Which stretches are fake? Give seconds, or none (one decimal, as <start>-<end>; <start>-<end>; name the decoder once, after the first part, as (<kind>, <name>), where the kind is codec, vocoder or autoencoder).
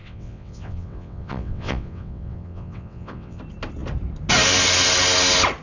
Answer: 0.0-3.4 (vocoder, WaveNeXt)